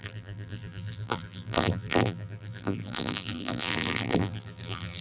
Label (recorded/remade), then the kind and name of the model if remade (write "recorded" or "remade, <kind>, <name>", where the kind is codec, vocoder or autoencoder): remade, vocoder, BigVGAN v2